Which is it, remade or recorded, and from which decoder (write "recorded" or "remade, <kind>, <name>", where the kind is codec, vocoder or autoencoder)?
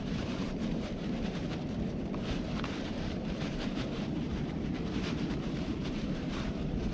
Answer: remade, vocoder, BigVGAN v2